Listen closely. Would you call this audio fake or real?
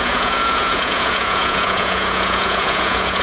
fake